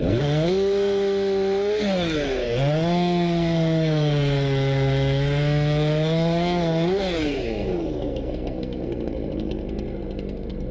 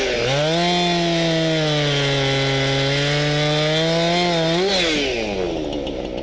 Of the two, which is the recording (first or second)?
second